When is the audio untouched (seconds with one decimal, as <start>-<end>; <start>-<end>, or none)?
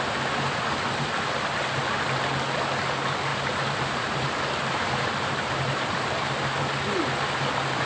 0.0-3.3; 6.3-7.9